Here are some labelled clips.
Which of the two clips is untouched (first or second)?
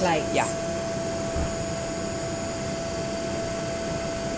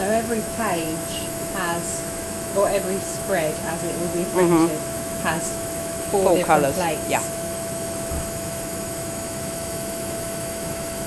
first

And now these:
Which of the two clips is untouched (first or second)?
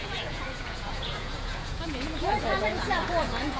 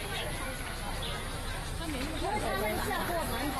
second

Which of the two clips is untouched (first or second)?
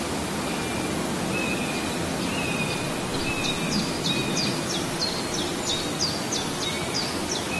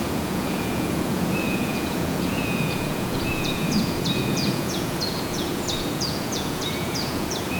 first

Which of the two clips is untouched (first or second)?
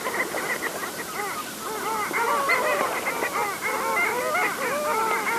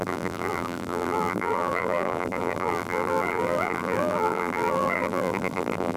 first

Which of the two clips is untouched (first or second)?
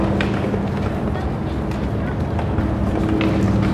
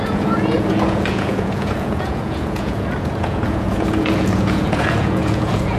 first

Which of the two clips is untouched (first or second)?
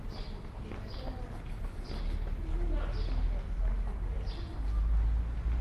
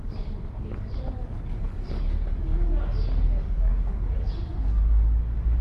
first